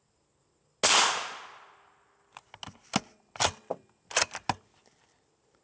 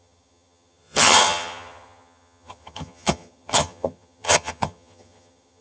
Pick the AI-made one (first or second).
second